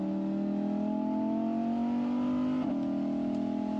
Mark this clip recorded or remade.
recorded